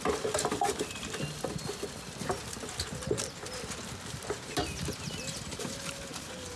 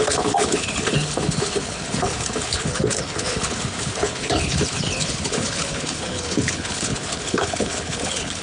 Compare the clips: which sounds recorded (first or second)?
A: first